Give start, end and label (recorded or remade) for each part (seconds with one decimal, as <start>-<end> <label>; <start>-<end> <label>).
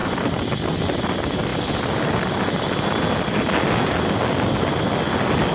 0.0-5.5 recorded